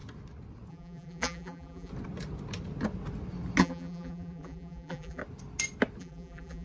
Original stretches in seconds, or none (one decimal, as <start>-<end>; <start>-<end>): 0.0-0.7; 1.9-3.6; 5.2-6.0